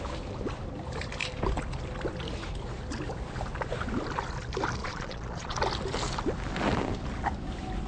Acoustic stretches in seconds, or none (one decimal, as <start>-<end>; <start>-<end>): 0.0-4.8; 5.6-7.9